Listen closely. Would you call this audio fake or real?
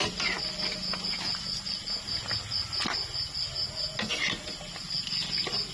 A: real